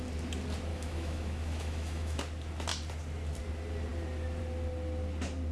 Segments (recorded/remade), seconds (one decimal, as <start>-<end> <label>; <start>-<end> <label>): 0.0-0.7 recorded; 0.7-2.2 remade; 2.2-5.5 recorded